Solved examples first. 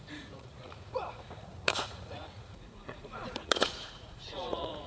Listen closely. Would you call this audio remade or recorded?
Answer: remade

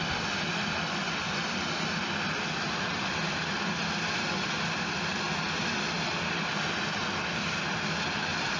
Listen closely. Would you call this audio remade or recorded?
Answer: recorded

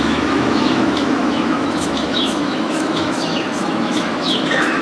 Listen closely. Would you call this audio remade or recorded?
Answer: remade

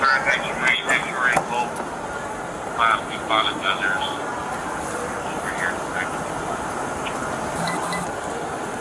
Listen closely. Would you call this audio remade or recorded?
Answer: remade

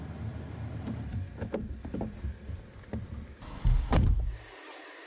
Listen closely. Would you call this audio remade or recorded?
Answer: recorded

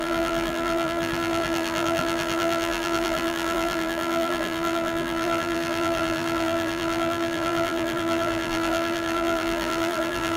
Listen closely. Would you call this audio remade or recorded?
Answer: remade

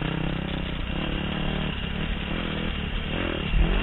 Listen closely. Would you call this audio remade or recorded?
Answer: recorded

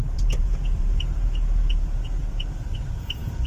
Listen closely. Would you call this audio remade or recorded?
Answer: remade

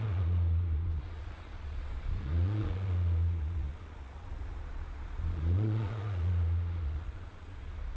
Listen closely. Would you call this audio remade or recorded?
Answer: remade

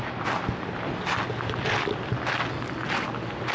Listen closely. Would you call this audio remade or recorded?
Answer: recorded